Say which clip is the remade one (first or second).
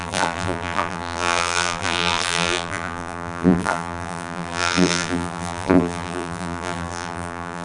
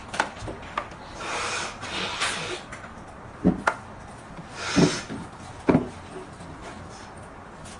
first